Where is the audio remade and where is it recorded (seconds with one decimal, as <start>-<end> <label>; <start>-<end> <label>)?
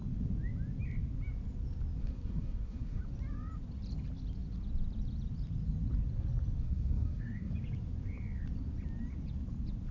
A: 0.0-2.0 recorded; 2.0-3.0 remade; 3.0-6.6 recorded; 6.6-7.5 remade; 7.5-9.9 recorded